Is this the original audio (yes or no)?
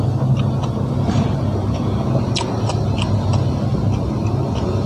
yes